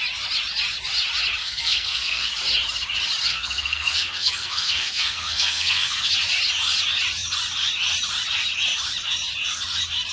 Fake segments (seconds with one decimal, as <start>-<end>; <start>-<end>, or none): 1.4-2.3; 3.3-6.1